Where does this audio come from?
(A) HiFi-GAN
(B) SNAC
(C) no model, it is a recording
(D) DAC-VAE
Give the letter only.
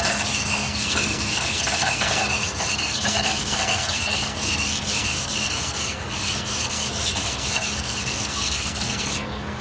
B